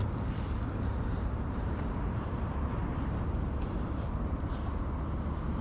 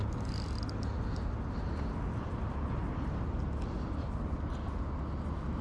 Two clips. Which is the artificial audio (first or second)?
first